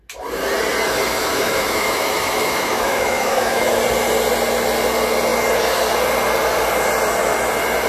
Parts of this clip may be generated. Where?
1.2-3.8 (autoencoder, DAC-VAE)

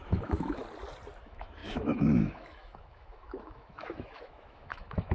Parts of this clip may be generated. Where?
0.0-0.6 (autoencoder, DAC-VAE); 1.2-5.1

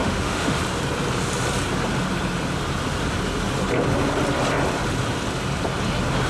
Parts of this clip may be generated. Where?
0.0-0.6 (autoencoder, DAC-VAE)

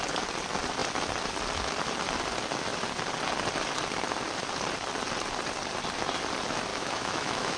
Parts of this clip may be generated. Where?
6.7-7.6 (autoencoder, DAC-VAE)

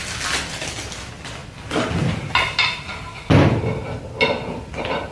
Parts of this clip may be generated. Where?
none

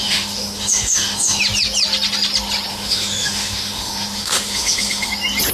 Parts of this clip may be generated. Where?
0.0-1.4 (autoencoder, DAC-VAE); 2.7-5.1